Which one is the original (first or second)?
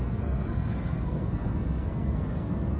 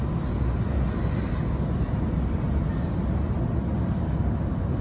second